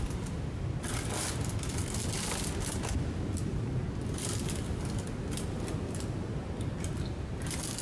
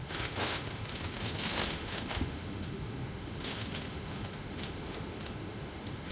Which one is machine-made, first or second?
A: second